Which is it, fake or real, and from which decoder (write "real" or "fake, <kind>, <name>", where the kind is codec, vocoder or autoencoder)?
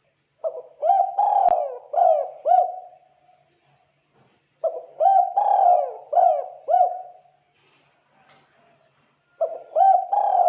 real